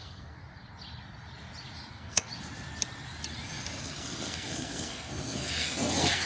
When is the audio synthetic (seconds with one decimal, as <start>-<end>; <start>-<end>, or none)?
0.0-0.4; 1.9-2.3; 3.8-6.3